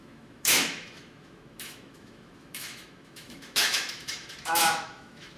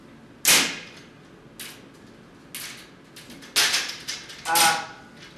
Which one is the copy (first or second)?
first